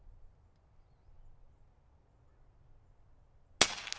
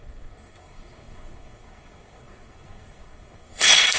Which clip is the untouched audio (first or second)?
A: first